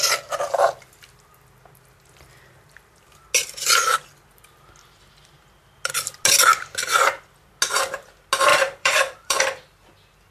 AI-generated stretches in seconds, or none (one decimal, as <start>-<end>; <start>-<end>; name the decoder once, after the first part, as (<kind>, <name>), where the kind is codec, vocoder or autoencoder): 8.5-9.4 (vocoder, BigVGAN v2)